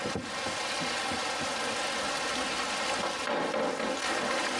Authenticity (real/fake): real